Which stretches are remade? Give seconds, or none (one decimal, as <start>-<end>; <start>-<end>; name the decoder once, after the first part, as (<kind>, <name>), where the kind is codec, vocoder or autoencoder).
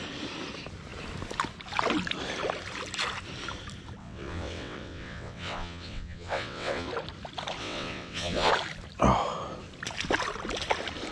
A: 4.0-6.9 (vocoder, WaveNeXt); 7.6-8.5